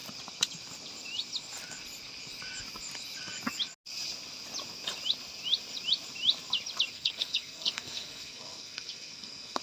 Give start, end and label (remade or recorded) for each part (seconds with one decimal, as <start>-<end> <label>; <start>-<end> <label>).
0.0-6.9 recorded; 6.9-9.6 remade